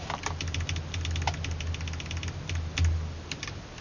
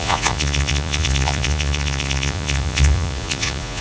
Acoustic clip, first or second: first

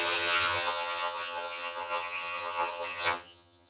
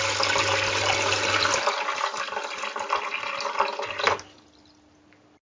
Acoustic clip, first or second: second